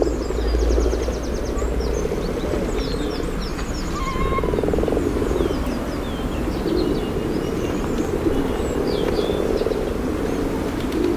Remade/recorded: recorded